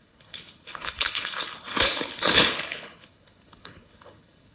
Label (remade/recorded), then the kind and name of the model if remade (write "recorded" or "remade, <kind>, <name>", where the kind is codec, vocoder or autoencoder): remade, codec, HILCodec